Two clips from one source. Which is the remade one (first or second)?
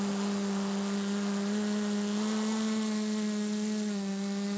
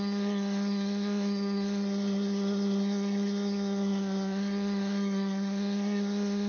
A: second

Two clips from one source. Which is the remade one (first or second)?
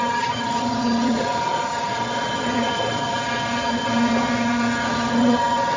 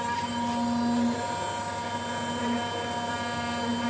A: first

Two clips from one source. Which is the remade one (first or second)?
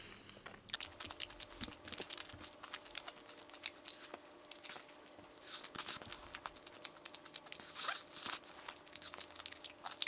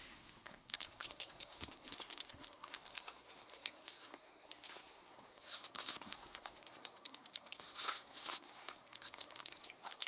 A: second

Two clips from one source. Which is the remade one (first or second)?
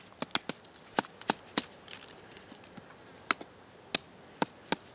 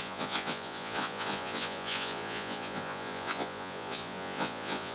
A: second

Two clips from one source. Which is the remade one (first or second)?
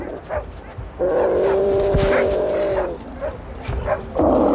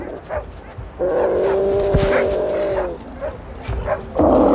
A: first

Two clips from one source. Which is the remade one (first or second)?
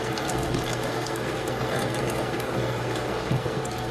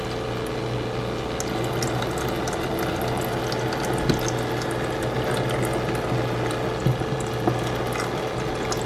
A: first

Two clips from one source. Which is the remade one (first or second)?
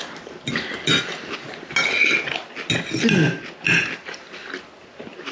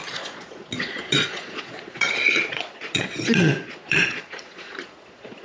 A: second